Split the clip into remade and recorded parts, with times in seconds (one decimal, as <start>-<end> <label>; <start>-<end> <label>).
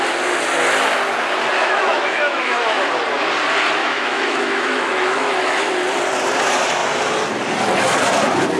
0.0-1.6 recorded; 1.6-2.8 remade; 2.8-3.8 recorded; 3.8-5.7 remade; 5.7-8.6 recorded